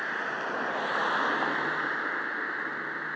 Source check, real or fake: real